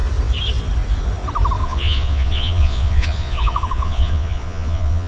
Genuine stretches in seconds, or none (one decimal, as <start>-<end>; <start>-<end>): 0.0-1.6